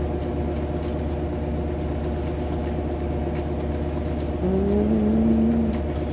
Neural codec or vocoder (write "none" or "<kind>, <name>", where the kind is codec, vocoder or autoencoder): none